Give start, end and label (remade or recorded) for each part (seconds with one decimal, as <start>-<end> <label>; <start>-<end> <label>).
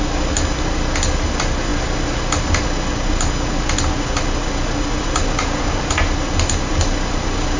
0.0-7.6 recorded